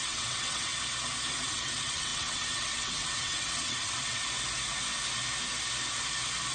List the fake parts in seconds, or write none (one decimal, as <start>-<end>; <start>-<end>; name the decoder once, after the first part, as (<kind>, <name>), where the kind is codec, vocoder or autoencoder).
0.0-0.7 (vocoder, WaveNeXt); 1.3-4.2